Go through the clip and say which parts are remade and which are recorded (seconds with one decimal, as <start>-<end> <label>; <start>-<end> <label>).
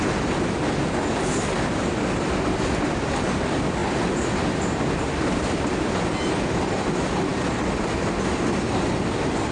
0.0-9.5 recorded